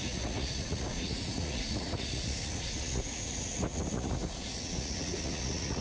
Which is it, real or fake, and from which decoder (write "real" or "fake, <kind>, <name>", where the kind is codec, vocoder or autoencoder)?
fake, vocoder, Vocos